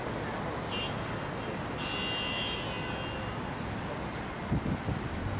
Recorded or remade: recorded